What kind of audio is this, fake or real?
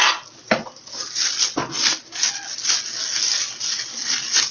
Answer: real